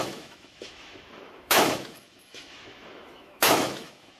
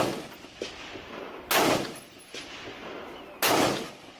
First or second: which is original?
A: second